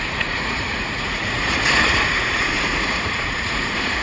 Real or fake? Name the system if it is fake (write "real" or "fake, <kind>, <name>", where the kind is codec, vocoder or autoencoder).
fake, vocoder, Vocos